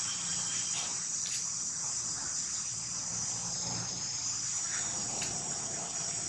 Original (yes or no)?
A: no